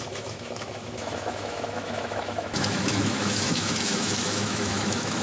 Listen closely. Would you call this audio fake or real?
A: fake